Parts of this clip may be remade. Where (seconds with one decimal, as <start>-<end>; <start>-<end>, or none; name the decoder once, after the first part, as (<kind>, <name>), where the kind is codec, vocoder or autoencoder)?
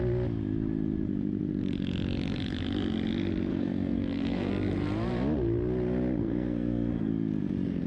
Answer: 3.5-4.5 (codec, SNAC); 6.2-7.1